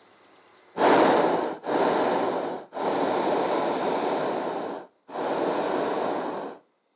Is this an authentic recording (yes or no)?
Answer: yes